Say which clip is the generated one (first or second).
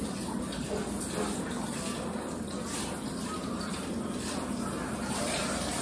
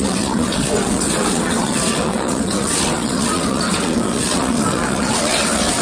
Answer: second